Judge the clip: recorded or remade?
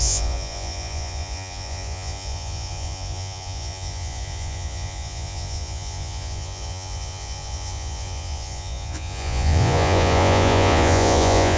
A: remade